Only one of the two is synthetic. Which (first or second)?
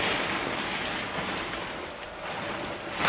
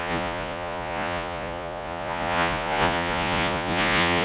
second